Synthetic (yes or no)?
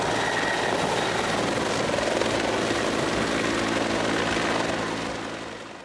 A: no